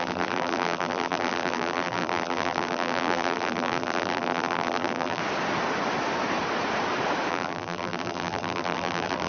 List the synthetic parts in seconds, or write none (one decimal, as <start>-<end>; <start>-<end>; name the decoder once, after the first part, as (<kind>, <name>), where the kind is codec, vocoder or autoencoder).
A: 0.0-5.2 (vocoder, BigVGAN v2); 7.3-9.3

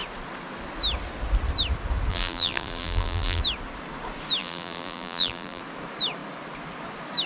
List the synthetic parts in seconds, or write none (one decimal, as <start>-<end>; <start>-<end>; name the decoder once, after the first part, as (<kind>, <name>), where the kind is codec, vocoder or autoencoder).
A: 2.1-3.4 (vocoder, BigVGAN v2); 4.4-5.6